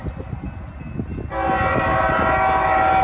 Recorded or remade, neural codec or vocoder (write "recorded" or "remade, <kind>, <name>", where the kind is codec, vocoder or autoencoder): recorded